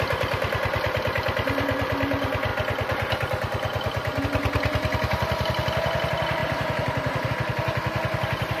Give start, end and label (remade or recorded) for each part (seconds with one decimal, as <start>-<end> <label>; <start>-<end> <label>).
0.0-6.4 recorded; 6.4-7.3 remade; 7.3-8.6 recorded